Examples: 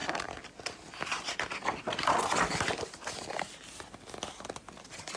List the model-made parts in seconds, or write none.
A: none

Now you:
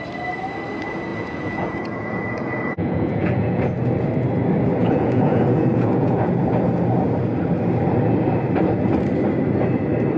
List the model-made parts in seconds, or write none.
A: 1.1-3.6 (vocoder, Vocos); 4.8-6.4

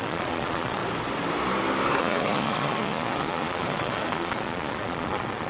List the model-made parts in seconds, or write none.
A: 0.0-0.8 (vocoder, Vocos); 2.0-5.5

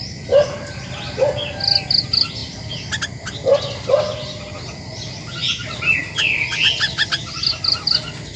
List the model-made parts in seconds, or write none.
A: none

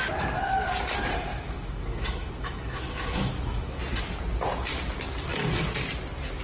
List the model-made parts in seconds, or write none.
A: 1.3-3.8 (autoencoder, DAC-VAE)

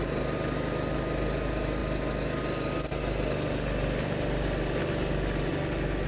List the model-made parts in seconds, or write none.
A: none

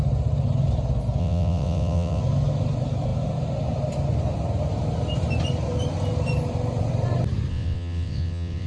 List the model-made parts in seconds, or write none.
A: 1.2-2.2 (vocoder, WaveNeXt); 7.5-8.7

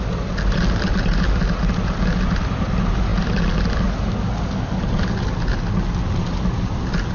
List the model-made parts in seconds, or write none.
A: none